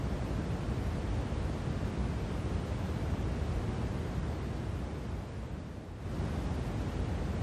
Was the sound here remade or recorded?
recorded